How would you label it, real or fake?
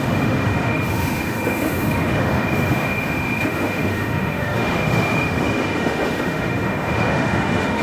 fake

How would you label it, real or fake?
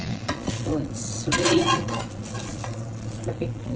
fake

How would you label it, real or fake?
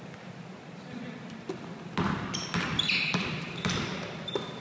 real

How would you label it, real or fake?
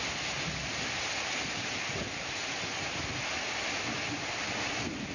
real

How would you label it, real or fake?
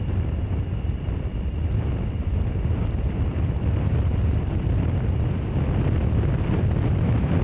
fake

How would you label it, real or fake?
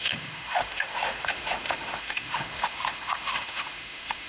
fake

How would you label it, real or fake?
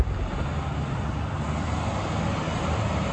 real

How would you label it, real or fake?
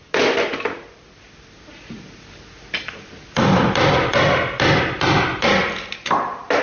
real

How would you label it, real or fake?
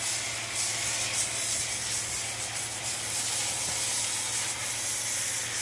real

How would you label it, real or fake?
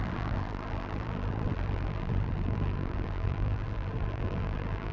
fake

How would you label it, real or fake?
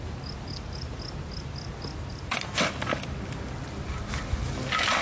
real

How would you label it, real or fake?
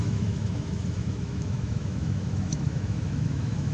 fake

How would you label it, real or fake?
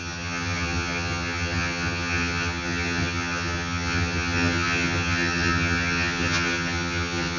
fake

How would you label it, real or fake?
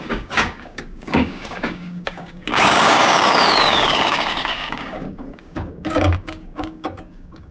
fake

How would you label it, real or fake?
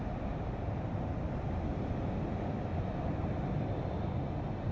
real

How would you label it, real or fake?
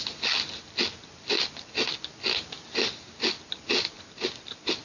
real